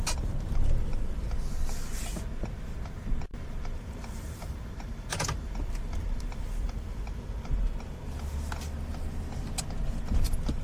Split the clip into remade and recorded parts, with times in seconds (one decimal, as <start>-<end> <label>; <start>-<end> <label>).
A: 0.0-3.3 recorded; 3.3-7.5 remade; 7.5-10.6 recorded